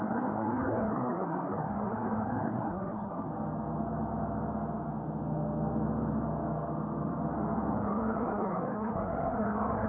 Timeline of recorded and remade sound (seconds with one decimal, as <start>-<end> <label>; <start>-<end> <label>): 0.0-3.3 remade; 3.3-7.7 recorded; 7.7-9.9 remade